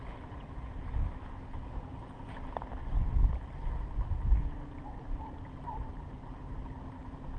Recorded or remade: recorded